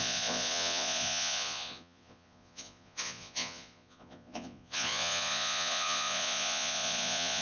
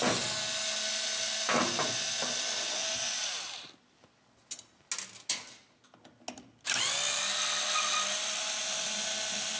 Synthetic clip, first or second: first